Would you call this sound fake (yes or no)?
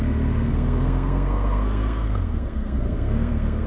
yes